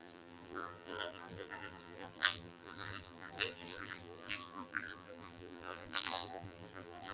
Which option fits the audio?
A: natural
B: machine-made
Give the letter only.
B